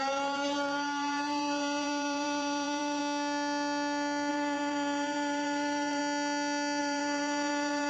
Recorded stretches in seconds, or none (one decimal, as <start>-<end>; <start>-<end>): 3.0-4.3; 6.0-6.8